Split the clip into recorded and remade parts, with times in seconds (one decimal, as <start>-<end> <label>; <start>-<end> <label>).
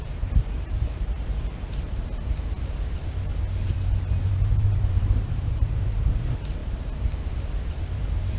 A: 0.0-3.3 remade; 3.3-4.2 recorded; 4.2-8.4 remade